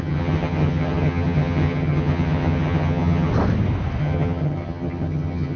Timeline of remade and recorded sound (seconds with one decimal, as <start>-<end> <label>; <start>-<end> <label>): 0.0-3.3 remade; 3.3-4.0 recorded; 4.0-5.6 remade